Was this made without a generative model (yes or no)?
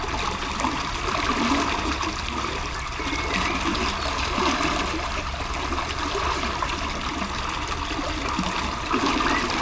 yes